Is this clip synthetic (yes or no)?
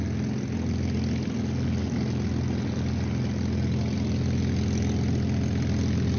no